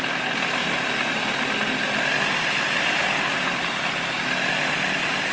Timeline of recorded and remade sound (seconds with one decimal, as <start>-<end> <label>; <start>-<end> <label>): 0.0-5.3 recorded